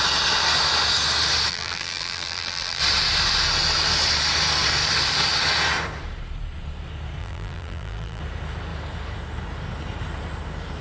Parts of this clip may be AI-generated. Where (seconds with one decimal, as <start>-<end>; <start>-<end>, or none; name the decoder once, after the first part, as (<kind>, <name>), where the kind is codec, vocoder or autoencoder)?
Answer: 1.5-2.8 (vocoder, BigVGAN v2); 7.2-8.2